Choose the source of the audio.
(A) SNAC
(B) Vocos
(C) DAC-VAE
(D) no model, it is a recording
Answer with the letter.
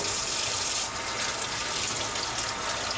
D